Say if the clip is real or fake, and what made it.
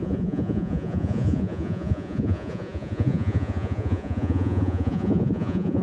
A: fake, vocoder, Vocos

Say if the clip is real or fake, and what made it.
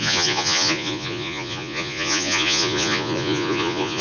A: fake, vocoder, Vocos